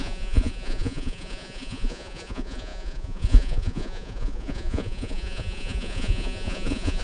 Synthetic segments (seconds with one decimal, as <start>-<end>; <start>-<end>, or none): 0.0-7.0